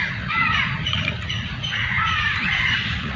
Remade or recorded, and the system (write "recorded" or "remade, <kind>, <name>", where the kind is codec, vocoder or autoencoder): remade, vocoder, Vocos